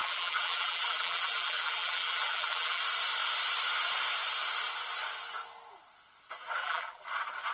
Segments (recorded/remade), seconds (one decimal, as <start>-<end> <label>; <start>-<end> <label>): 0.0-2.8 remade; 2.8-6.6 recorded; 6.6-7.1 remade; 7.1-7.5 recorded